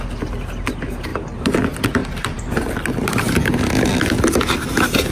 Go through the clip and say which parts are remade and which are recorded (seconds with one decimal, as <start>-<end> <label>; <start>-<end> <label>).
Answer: 0.0-1.1 recorded; 1.1-1.6 remade; 1.6-2.0 recorded; 2.0-3.6 remade; 3.6-5.1 recorded